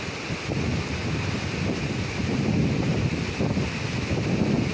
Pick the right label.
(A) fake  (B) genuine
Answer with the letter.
B